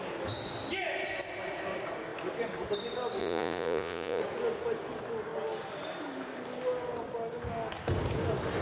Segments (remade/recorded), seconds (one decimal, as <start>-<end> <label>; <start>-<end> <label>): 0.0-3.2 recorded; 3.2-4.2 remade; 4.2-8.6 recorded